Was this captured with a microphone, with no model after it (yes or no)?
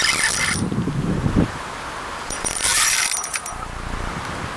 no